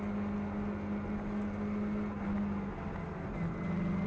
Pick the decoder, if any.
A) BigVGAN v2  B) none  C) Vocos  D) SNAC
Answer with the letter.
B